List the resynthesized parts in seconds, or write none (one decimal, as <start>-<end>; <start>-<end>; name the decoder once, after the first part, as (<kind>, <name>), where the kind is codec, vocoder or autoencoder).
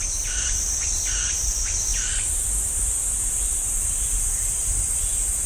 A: 1.9-5.5 (vocoder, BigVGAN v2)